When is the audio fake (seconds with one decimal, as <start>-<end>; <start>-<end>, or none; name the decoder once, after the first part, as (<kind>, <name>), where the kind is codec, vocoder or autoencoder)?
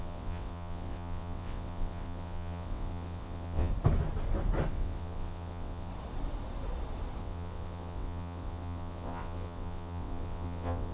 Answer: 0.0-3.7 (vocoder, WaveNeXt); 4.7-5.9; 7.2-10.9